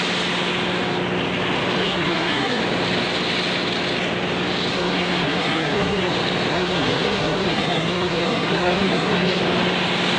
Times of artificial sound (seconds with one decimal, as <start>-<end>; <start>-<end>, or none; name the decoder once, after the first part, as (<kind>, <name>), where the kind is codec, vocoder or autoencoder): 1.8-2.6 (codec, SNAC); 4.7-6.1; 6.5-9.4